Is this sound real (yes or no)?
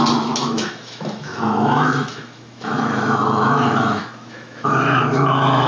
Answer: no